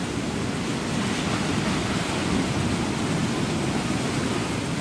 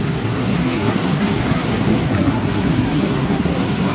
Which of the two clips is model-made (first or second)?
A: second